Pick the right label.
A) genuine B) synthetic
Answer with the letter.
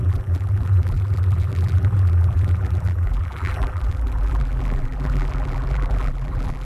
B